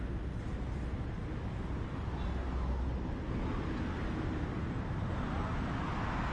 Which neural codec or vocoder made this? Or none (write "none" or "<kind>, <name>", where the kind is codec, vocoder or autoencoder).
none